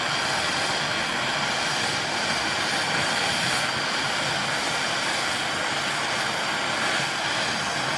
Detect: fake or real real